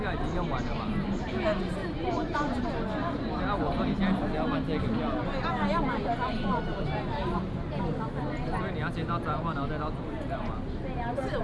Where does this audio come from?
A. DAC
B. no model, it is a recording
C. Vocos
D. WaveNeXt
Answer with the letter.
B